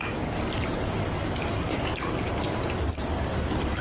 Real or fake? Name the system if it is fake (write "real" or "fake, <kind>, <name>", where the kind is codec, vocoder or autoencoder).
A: real